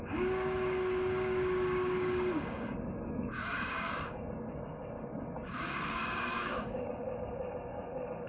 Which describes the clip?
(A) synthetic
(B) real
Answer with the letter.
A